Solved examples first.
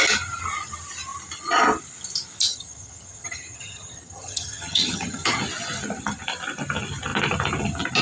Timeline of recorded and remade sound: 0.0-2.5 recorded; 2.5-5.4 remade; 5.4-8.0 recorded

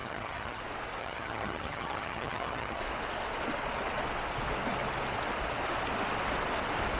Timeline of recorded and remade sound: 0.0-0.6 remade; 0.6-1.0 recorded; 1.0-2.8 remade; 2.8-7.0 recorded

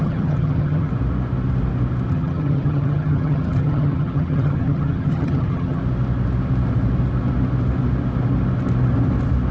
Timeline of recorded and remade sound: 0.0-0.9 remade; 0.9-2.1 recorded; 2.1-5.8 remade; 5.8-9.5 recorded

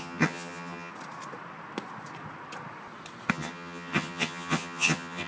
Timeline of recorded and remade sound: 0.0-0.9 remade; 0.9-3.3 recorded; 3.3-5.3 remade

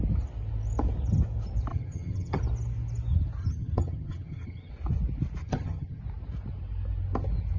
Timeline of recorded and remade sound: 0.0-1.7 recorded; 1.7-2.4 remade; 2.4-3.4 recorded; 3.4-4.7 remade; 4.7-5.4 recorded; 5.4-6.0 remade; 6.0-7.6 recorded

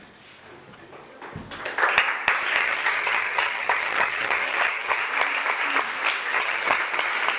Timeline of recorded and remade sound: 0.0-2.6 recorded; 2.6-5.0 remade; 5.0-6.3 recorded; 6.3-6.8 remade; 6.8-7.4 recorded

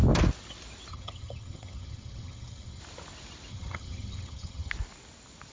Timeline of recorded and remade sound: 0.0-0.9 recorded; 0.9-2.8 remade; 2.8-3.5 recorded; 3.5-4.7 remade; 4.7-5.5 recorded

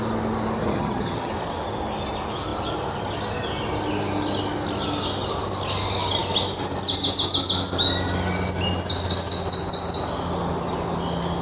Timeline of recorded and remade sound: 0.0-0.6 recorded; 0.6-1.3 remade; 1.3-11.4 recorded